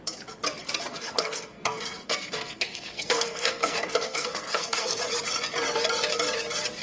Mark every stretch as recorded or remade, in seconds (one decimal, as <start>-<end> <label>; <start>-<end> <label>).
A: 0.0-0.9 recorded; 0.9-5.0 remade; 5.0-6.8 recorded